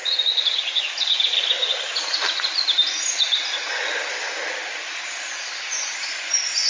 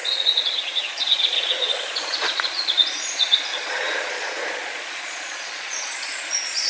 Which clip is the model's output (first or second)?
second